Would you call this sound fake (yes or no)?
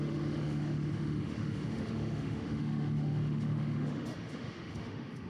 yes